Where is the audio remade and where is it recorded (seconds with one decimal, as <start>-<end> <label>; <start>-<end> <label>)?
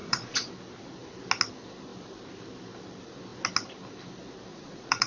0.0-0.5 remade; 0.5-4.5 recorded; 4.5-5.1 remade